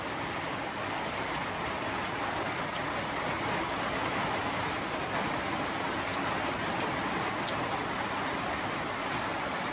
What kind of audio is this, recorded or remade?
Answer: recorded